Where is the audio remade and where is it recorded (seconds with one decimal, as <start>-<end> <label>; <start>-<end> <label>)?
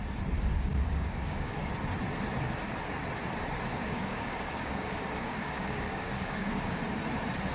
0.0-0.5 recorded; 0.5-1.7 remade; 1.7-3.8 recorded; 3.8-6.8 remade; 6.8-7.5 recorded